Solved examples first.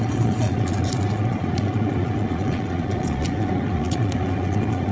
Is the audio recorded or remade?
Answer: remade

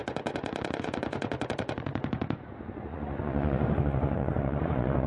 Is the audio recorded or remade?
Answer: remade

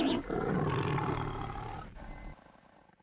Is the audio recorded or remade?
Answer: recorded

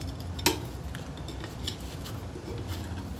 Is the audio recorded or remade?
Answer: recorded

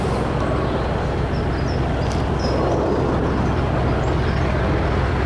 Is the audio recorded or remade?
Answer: recorded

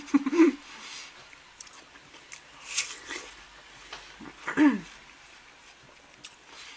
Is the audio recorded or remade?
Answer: recorded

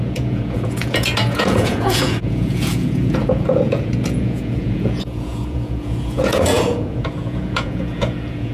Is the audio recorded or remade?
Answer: remade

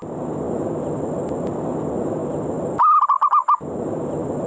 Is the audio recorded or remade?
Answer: recorded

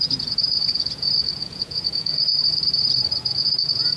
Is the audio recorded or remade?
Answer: remade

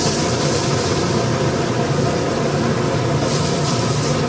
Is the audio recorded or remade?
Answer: recorded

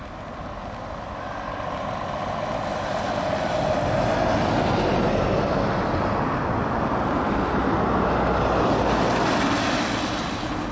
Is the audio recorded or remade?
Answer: recorded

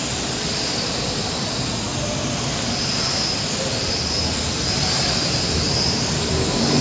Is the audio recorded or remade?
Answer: recorded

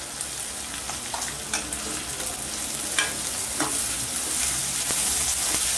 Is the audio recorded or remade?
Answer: recorded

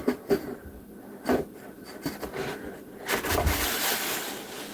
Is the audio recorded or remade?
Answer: recorded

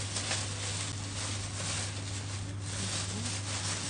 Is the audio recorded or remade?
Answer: recorded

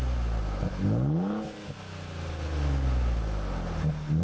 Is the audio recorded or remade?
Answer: recorded